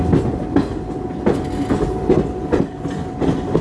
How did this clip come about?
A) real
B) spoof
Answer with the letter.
A